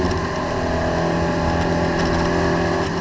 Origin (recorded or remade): recorded